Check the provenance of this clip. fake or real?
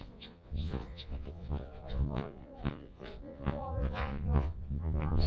fake